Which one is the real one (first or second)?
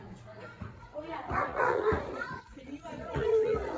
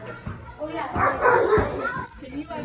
second